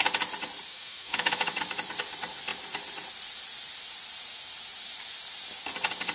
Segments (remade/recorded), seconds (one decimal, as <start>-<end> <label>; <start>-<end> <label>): 0.0-0.7 recorded; 0.7-1.6 remade; 1.6-6.1 recorded